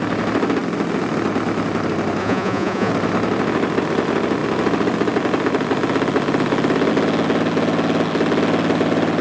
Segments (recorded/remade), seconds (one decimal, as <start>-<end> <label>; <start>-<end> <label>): 0.0-2.2 recorded; 2.2-2.9 remade; 2.9-9.2 recorded